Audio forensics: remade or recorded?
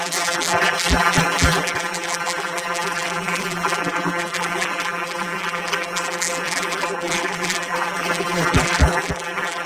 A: remade